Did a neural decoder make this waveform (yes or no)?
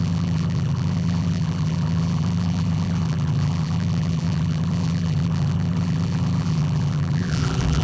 yes